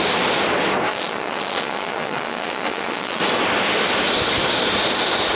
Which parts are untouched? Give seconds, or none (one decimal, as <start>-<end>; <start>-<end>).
0.0-0.9; 3.2-5.4